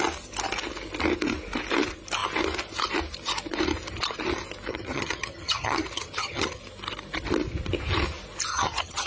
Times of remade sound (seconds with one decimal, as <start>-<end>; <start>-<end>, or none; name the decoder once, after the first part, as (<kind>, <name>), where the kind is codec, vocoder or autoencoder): 4.7-6.6 (vocoder, HiFi-GAN); 8.5-9.1